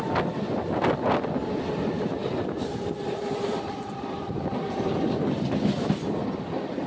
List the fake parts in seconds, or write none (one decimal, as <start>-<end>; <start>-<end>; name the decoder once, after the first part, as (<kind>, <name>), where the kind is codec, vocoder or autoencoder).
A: 2.2-5.0 (vocoder, BigVGAN v2)